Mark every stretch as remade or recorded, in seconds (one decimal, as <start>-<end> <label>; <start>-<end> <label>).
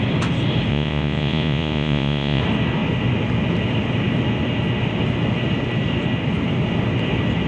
0.0-0.7 recorded; 0.7-2.4 remade; 2.4-7.5 recorded